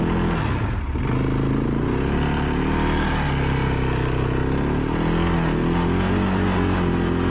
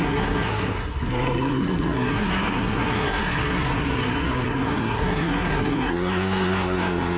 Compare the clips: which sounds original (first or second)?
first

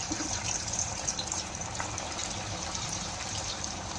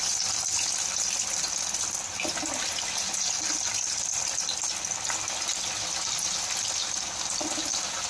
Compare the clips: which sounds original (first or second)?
second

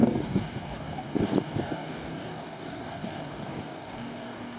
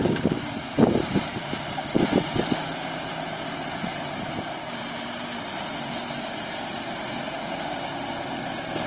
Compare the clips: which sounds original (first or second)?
second